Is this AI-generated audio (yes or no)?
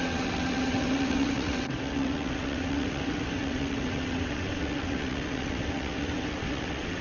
yes